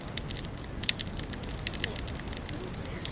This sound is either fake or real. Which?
real